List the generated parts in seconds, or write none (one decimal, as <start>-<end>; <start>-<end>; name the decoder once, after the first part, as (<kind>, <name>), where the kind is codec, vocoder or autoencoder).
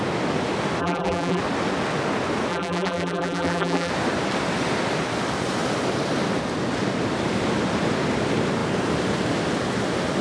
0.8-1.4 (vocoder, BigVGAN v2); 2.5-3.9